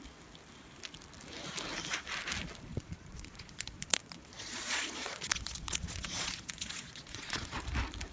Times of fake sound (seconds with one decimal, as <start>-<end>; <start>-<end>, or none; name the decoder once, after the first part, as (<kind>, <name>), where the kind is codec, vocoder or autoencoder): 2.7-7.6 (vocoder, Vocos)